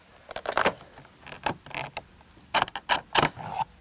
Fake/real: real